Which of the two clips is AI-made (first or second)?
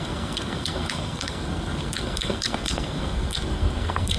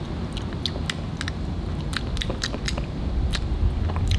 first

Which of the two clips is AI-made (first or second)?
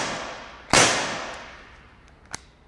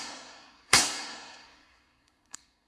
second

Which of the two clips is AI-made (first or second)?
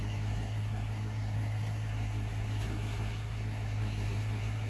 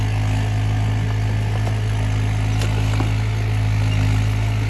first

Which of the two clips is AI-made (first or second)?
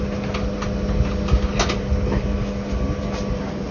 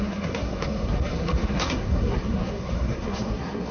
second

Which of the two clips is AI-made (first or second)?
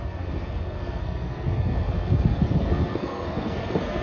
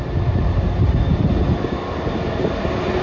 first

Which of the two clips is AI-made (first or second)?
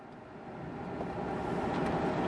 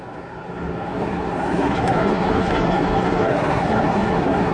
second